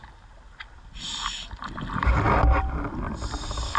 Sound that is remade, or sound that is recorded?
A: recorded